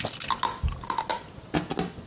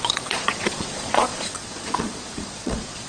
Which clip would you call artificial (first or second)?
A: second